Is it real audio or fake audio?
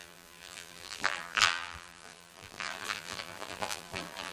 fake